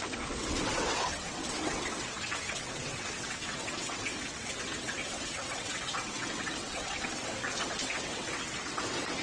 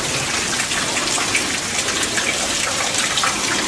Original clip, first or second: second